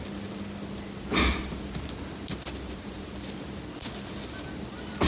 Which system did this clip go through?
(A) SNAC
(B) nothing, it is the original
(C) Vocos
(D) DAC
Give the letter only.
B